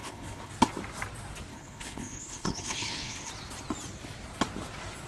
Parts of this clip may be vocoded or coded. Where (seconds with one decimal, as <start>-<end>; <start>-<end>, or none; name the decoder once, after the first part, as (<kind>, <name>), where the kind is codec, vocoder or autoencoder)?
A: 0.0-0.5 (codec, HILCodec); 1.5-3.3